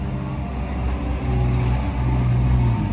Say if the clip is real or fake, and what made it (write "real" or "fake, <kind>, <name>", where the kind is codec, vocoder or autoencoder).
real